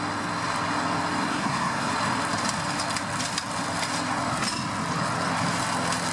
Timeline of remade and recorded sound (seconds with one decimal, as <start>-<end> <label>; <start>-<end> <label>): 0.0-1.3 recorded; 1.3-1.9 remade; 1.9-6.1 recorded